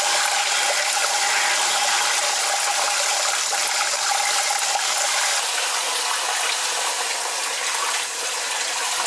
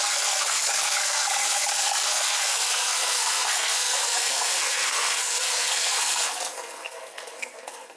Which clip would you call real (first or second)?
first